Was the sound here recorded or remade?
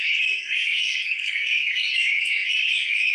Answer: remade